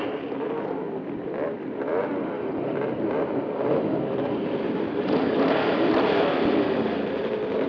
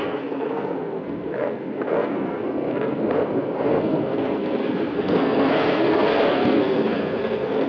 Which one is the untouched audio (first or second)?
first